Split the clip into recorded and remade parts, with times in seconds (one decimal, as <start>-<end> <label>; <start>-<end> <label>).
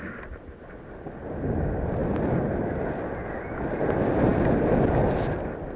0.0-5.8 recorded